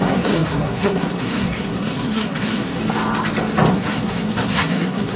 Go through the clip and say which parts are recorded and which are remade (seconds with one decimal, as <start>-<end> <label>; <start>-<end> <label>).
0.0-2.8 remade; 2.8-3.7 recorded; 3.7-5.2 remade